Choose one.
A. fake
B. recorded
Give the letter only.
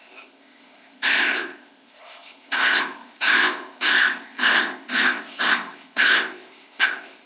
A